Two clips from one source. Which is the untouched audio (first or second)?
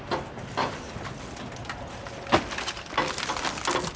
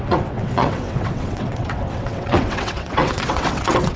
first